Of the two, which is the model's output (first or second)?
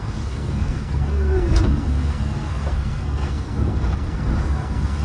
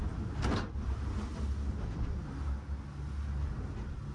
first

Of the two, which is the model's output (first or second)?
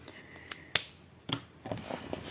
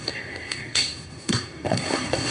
second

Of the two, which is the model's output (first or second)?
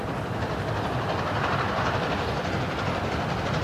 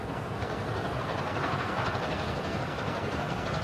second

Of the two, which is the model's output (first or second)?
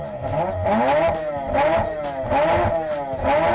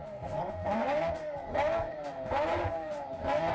second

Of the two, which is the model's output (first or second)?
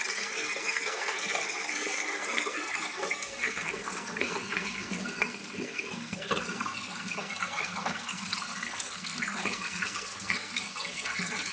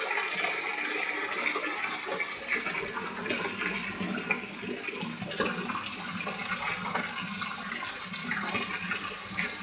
first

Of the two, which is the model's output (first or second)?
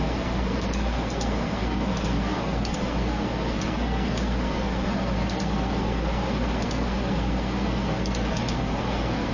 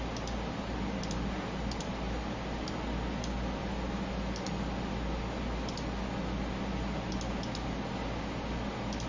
first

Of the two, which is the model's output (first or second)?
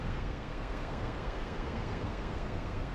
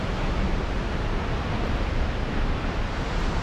first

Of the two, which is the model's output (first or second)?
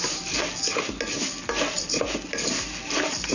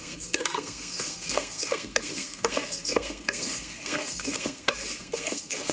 second